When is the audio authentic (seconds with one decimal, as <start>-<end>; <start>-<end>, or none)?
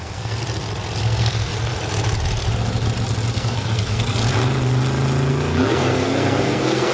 0.4-1.0; 1.5-3.3; 4.2-5.3